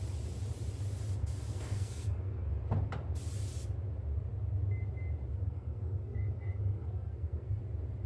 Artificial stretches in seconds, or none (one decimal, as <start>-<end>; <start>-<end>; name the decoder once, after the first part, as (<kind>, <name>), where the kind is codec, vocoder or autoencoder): 1.2-2.5 (codec, SNAC); 5.3-7.6